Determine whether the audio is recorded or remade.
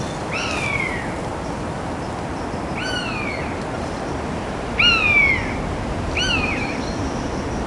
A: recorded